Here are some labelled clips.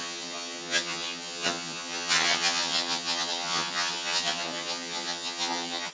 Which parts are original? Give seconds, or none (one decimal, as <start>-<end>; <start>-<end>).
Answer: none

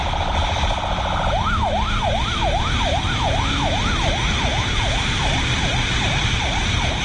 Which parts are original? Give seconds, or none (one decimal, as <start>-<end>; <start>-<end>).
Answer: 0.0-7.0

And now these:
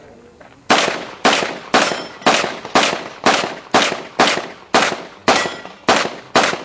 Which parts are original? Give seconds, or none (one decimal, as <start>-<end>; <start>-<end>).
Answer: 0.0-6.6

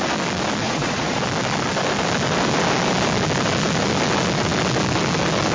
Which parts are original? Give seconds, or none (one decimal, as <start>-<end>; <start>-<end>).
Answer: 0.0-0.6; 1.2-5.5

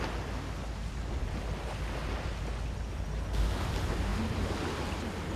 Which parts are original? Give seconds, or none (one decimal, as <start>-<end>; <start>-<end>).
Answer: 0.0-5.4

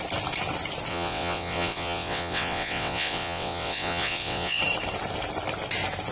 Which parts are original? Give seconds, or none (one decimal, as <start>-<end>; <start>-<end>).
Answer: 0.0-0.9; 4.6-6.1